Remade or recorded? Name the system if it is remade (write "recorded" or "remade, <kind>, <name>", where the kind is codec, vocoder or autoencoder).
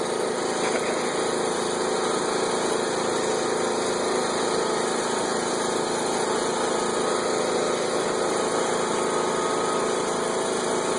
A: recorded